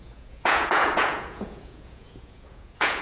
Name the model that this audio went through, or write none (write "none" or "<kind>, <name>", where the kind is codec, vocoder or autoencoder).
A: vocoder, Vocos